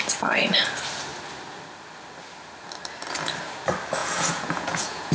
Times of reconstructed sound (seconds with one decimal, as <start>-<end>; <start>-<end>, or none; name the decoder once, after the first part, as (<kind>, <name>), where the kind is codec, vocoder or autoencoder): 4.0-5.1 (vocoder, Vocos)